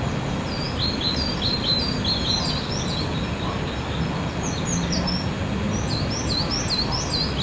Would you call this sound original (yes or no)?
yes